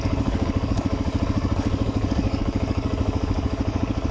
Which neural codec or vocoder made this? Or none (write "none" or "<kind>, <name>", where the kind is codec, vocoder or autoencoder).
codec, DAC